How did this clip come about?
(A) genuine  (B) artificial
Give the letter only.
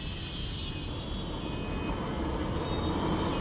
A